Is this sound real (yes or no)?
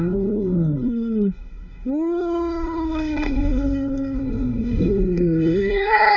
no